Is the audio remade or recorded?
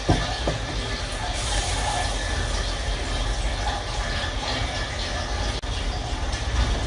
recorded